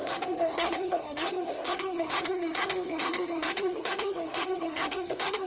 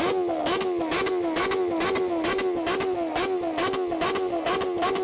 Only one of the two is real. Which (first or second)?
second